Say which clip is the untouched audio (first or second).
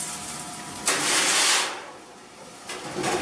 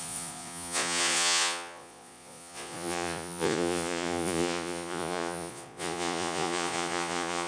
first